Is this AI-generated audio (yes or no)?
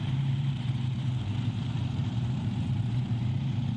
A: yes